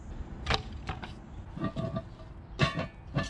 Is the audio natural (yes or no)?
yes